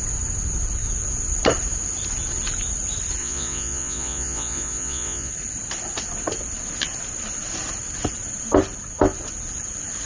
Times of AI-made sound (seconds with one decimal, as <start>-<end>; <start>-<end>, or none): 3.2-5.3